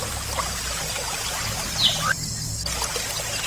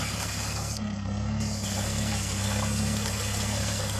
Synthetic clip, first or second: second